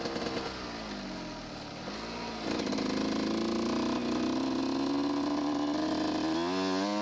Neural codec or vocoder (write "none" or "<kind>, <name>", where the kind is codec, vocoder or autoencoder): none